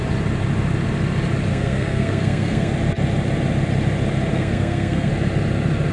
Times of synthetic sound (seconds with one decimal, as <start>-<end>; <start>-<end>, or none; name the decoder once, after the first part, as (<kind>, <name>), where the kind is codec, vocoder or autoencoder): 1.5-2.7 (codec, SNAC); 4.3-5.1